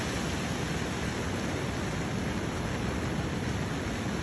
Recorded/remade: recorded